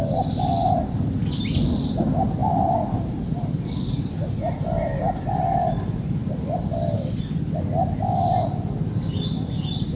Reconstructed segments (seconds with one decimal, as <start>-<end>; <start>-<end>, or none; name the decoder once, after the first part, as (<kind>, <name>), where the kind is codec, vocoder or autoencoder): 2.4-7.1 (vocoder, BigVGAN v2)